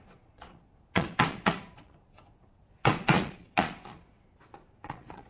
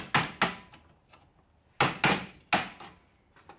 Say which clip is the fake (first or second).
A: first